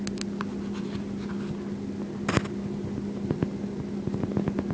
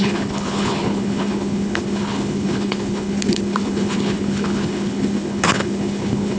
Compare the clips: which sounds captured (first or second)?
first